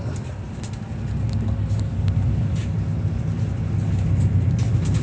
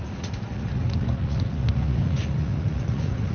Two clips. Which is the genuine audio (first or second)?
first